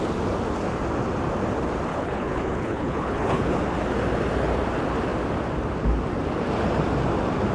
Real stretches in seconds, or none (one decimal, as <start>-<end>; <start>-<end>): 0.0-1.9; 3.6-7.5